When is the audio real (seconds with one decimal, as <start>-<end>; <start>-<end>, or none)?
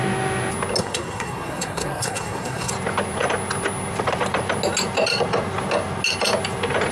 0.0-0.8; 2.7-6.9